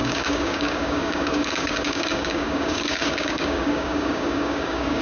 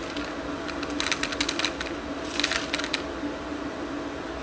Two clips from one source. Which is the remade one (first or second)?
first